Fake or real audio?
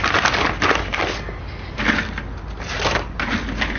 real